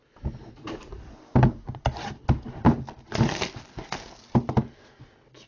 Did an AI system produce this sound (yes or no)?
no